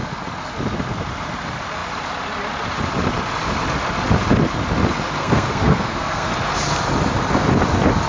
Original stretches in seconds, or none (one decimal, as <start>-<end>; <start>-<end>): 0.0-5.2; 6.3-8.1